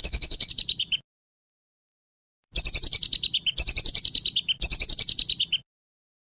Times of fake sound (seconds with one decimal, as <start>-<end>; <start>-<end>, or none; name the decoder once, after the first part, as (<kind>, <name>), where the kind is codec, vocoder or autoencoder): 0.0-0.5 (codec, HILCodec)